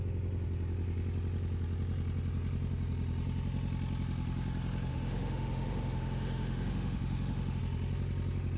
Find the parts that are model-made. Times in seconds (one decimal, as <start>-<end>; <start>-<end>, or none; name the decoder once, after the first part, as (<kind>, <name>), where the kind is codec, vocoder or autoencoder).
4.9-7.6 (autoencoder, DAC-VAE)